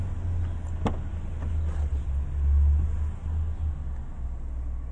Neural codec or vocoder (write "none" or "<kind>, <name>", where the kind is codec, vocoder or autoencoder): none